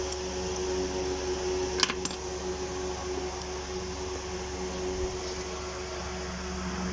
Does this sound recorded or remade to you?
recorded